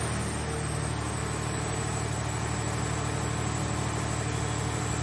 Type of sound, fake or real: real